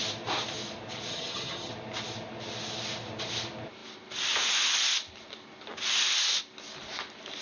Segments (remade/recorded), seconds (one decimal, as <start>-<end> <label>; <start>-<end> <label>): 0.0-1.1 recorded; 1.1-1.7 remade; 1.7-7.4 recorded